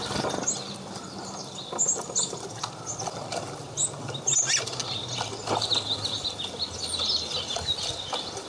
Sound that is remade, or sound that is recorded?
recorded